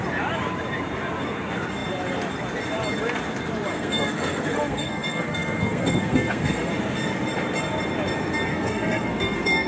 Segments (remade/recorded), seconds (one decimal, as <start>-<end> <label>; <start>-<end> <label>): 0.0-3.7 recorded; 3.7-6.7 remade; 6.7-8.5 recorded; 8.5-9.7 remade